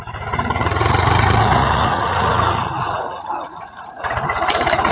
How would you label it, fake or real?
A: fake